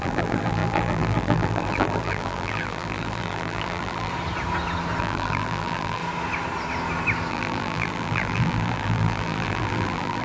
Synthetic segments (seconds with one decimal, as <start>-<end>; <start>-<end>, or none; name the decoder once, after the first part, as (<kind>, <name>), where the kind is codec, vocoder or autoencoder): 0.0-4.1 (vocoder, BigVGAN v2); 5.0-6.0; 7.3-10.2